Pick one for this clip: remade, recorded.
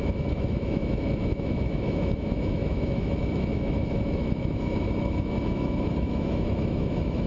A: remade